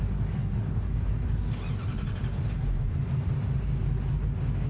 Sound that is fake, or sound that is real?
real